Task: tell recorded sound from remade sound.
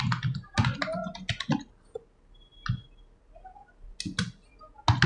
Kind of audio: recorded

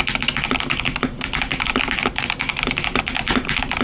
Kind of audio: recorded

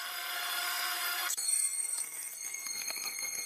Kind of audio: remade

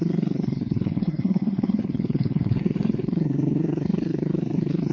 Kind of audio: remade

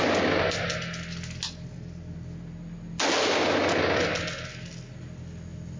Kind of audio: recorded